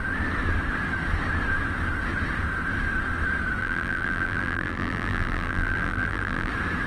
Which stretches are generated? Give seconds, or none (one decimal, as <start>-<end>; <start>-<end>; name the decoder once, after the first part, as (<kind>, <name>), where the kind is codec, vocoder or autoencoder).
3.6-6.5 (vocoder, BigVGAN v2)

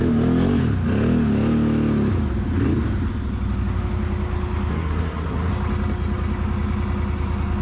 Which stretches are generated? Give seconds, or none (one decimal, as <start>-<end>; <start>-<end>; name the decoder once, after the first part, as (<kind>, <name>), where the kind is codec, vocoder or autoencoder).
4.7-5.5 (codec, SNAC)